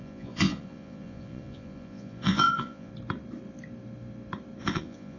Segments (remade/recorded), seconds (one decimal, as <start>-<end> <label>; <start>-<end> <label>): 0.0-2.9 remade; 2.9-4.6 recorded; 4.6-5.2 remade